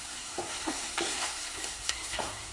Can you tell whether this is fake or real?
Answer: fake